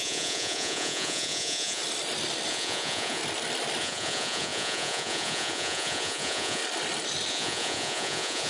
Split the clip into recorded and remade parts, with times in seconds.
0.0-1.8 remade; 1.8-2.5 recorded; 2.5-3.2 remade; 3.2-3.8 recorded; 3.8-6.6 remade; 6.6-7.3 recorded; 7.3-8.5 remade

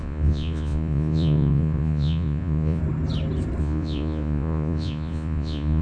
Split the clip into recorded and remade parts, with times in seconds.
0.0-2.8 remade; 2.8-3.6 recorded; 3.6-5.8 remade

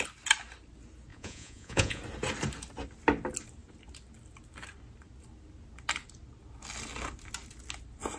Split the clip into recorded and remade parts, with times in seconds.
0.0-1.1 recorded; 1.1-2.0 remade; 2.0-8.2 recorded

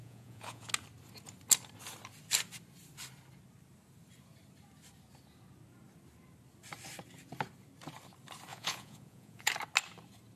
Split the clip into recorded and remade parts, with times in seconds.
0.0-0.7 remade; 0.7-8.5 recorded; 8.5-9.5 remade; 9.5-10.4 recorded

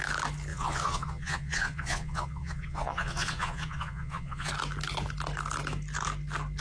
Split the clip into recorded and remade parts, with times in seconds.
0.0-0.5 recorded; 0.5-4.5 remade; 4.5-6.6 recorded